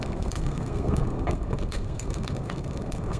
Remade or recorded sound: remade